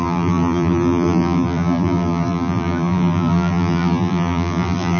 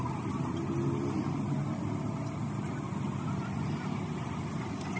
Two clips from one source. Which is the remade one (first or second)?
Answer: first